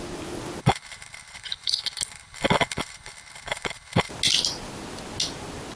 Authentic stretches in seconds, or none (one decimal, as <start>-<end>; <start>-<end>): 0.0-0.6; 4.1-5.8